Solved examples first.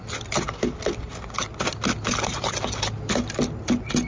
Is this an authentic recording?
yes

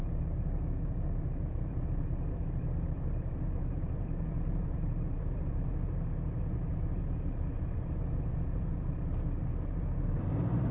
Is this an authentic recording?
no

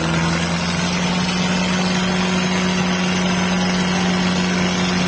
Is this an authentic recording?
yes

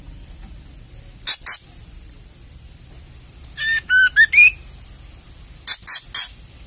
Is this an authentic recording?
yes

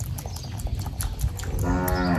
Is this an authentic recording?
yes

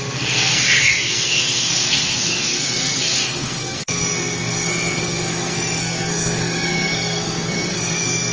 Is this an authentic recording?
no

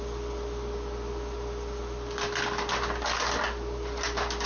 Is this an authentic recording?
yes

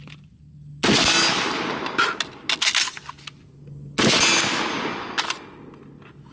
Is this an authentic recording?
yes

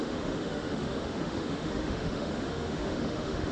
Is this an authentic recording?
no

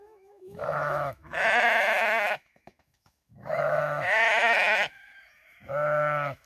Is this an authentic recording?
no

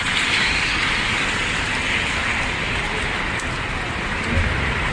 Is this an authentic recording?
yes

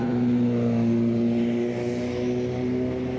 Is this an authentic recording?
yes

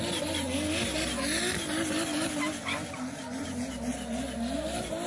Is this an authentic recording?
yes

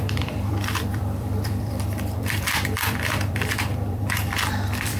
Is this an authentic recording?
no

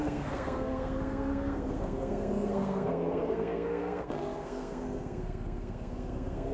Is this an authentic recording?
no